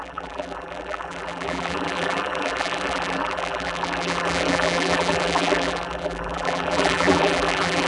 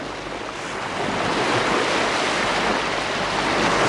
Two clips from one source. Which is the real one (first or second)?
second